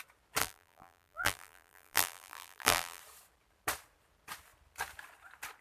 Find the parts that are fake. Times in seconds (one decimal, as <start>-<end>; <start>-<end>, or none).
0.4-3.0